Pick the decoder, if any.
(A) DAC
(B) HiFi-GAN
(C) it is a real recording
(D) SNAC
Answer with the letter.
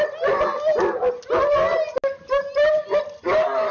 C